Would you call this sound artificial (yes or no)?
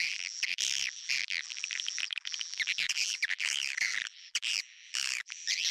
yes